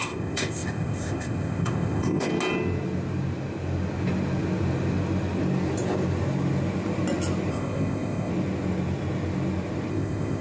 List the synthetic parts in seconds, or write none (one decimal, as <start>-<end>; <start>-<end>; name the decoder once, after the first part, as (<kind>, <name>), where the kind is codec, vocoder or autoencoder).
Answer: 0.0-2.3 (codec, ZipCodec); 7.5-8.3; 9.9-10.4